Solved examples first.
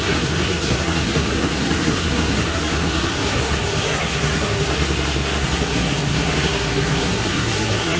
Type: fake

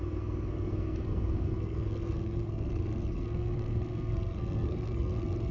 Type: fake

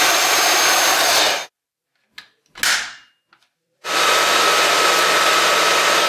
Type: real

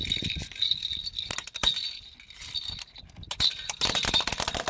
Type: real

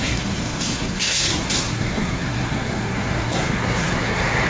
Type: fake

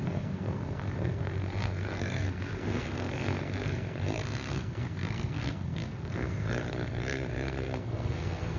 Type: fake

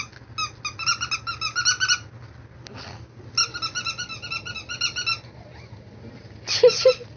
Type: real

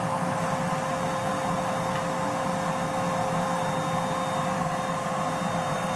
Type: real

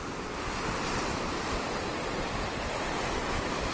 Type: real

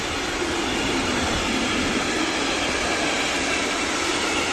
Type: real